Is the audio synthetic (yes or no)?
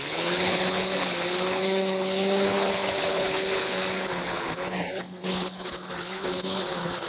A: yes